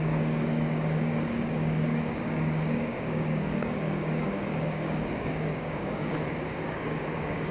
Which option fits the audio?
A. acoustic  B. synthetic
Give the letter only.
B